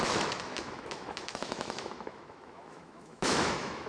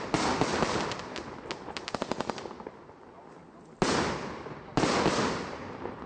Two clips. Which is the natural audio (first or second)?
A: second